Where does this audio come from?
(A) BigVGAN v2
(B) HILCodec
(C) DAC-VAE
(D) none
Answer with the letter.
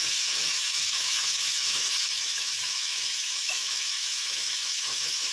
C